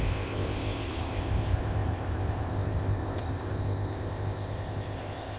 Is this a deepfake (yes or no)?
yes